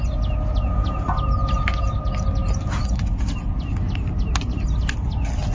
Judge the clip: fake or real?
real